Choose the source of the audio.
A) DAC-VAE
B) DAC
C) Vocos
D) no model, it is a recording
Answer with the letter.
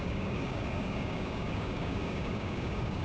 B